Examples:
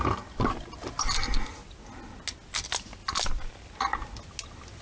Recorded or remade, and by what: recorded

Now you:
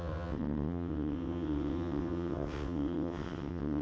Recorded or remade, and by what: remade, vocoder, WaveNeXt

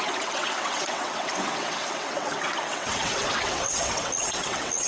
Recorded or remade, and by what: remade, vocoder, WaveNeXt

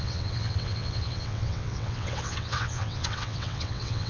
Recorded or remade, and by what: remade, vocoder, WaveNeXt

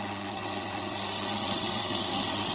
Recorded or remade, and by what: remade, vocoder, WaveNeXt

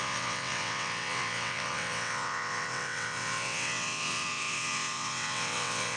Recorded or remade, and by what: remade, vocoder, WaveNeXt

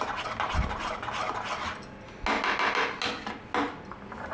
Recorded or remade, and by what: recorded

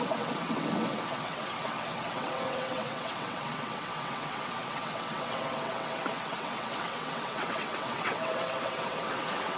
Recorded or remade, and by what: remade, vocoder, WaveNeXt